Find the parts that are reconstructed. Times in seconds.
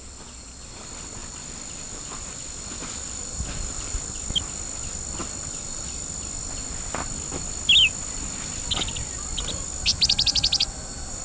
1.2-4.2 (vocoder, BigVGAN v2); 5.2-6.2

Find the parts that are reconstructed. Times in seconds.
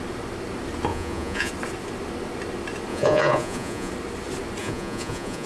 0.9-1.5 (vocoder, Vocos); 2.9-3.9; 4.6-5.5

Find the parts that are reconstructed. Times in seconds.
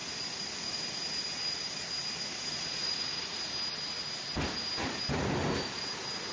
2.5-3.4 (vocoder, Vocos)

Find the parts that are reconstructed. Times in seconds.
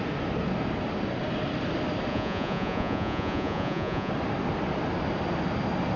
2.1-4.1 (vocoder, Vocos)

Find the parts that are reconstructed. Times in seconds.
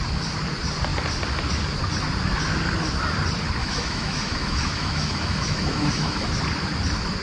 3.6-6.3 (autoencoder, DAC-VAE)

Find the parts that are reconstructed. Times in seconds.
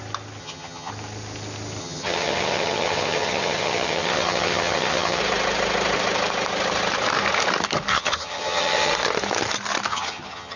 0.4-0.9 (vocoder, HiFi-GAN); 1.8-5.2; 7.9-8.9; 9.9-10.6